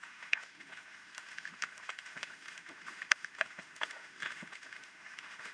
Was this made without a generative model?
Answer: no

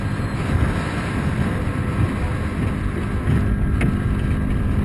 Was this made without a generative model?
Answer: yes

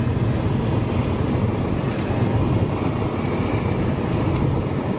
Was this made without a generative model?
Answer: yes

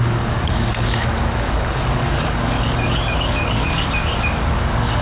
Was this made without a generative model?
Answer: no